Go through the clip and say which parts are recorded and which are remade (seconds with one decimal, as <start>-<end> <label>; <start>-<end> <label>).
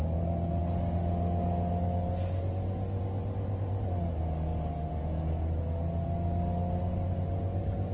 0.0-7.9 recorded